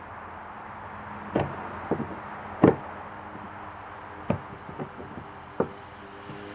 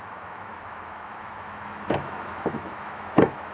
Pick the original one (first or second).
first